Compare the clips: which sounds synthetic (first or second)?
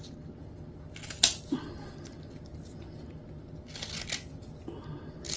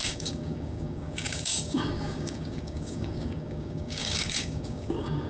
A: second